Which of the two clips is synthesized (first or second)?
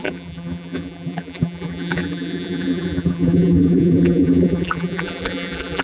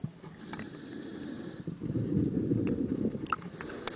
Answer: first